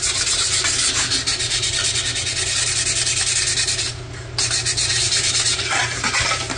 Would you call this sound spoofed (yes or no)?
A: no